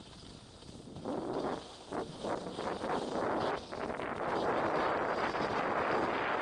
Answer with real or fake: real